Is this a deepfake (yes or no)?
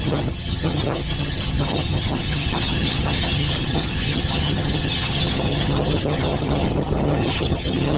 yes